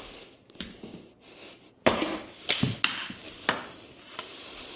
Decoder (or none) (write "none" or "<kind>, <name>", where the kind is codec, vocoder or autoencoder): none